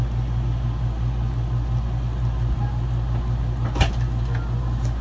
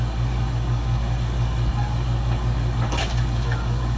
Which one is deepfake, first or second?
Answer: second